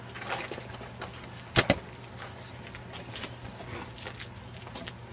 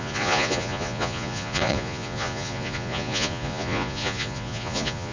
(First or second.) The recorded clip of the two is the first